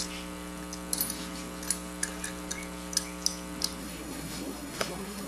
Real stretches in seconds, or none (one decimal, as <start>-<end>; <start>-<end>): 0.0-3.8

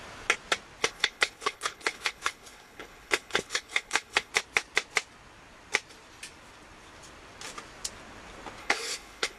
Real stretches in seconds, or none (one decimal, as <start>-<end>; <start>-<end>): 0.0-0.8; 4.3-8.6

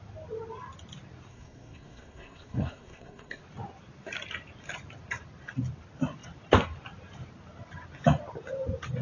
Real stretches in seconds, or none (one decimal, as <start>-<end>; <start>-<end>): 0.0-1.3; 3.4-9.0